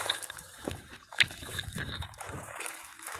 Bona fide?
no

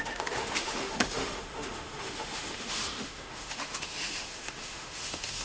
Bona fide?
no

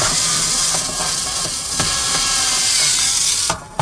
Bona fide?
yes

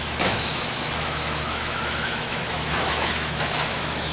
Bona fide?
no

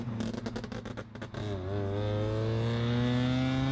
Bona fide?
yes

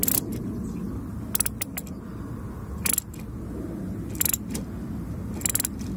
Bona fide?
yes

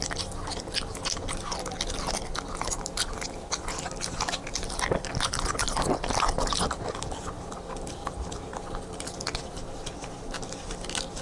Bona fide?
yes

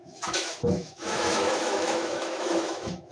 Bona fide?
no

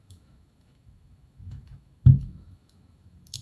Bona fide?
no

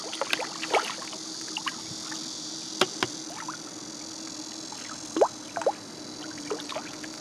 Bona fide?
yes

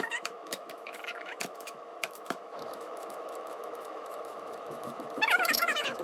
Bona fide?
no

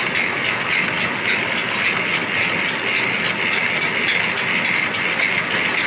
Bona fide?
yes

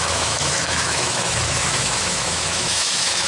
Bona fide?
no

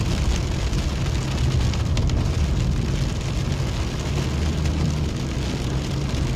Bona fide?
yes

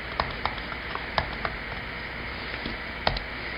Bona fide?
yes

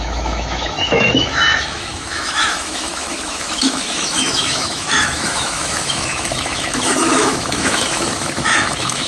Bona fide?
no